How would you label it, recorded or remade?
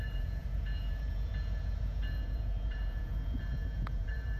remade